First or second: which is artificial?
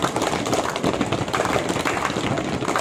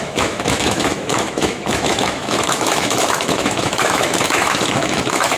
second